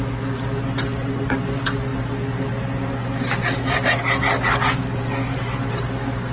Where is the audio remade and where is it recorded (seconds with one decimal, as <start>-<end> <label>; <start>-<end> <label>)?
0.0-6.3 recorded